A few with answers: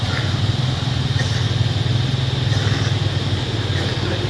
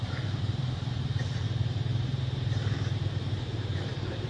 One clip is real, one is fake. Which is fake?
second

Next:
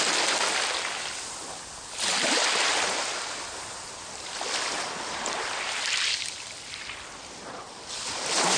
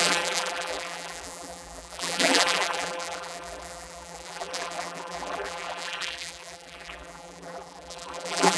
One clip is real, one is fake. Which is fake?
second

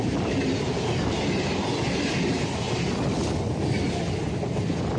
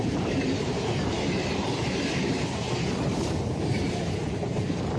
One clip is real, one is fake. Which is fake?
second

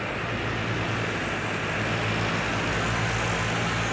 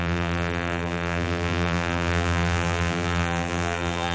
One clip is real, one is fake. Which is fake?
second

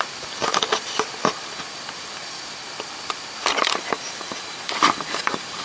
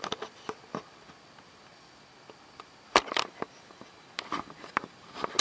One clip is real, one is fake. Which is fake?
first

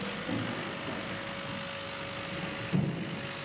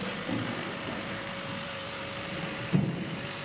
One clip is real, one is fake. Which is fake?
second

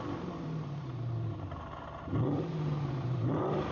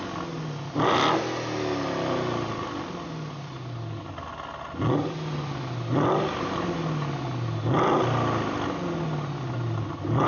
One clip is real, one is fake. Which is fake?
first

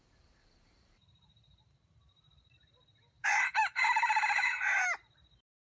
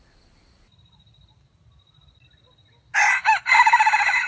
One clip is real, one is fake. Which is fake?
first